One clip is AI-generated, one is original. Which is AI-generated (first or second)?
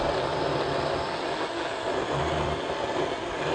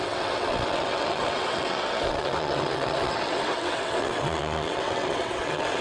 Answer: second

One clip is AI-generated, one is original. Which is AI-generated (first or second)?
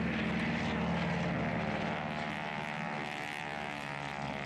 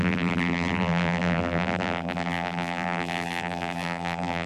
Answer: second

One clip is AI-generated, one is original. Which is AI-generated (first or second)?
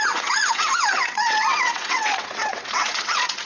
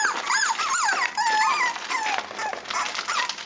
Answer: first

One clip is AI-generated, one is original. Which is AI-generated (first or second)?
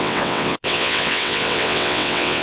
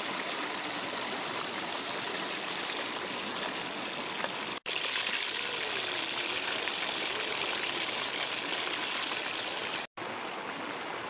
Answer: first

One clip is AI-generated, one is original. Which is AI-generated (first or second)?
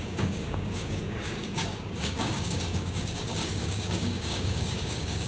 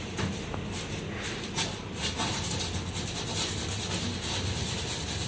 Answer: first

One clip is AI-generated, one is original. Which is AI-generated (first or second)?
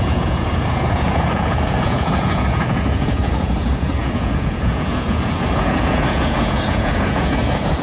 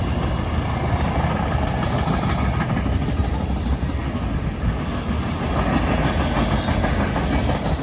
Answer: first